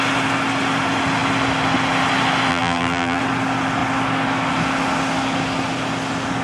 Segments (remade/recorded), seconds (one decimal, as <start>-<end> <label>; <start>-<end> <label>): 0.0-2.5 recorded; 2.5-3.2 remade; 3.2-6.4 recorded